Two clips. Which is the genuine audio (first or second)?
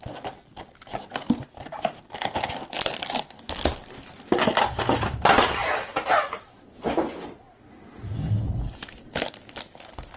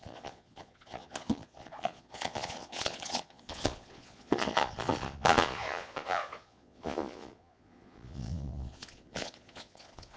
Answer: first